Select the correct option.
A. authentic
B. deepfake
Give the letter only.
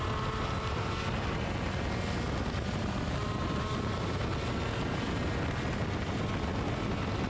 A